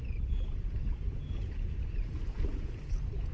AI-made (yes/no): yes